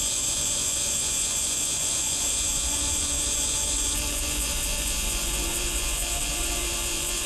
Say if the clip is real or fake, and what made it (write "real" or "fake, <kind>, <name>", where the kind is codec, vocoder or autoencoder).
fake, vocoder, Vocos